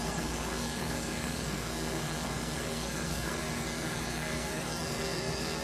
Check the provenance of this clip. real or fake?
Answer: fake